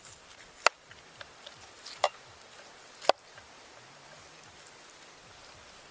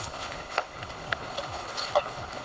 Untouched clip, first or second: first